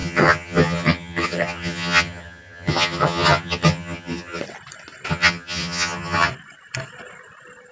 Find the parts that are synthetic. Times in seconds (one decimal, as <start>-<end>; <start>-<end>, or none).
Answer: 0.0-4.4; 5.1-6.3

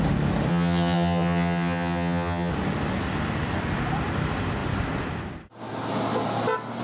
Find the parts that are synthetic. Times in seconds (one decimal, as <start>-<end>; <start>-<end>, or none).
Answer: 0.5-2.5

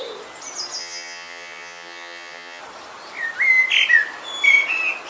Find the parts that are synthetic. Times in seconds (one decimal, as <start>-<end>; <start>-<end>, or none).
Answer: 0.8-2.6

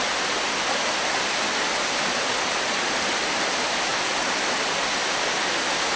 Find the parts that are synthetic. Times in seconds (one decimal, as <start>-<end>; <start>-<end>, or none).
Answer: none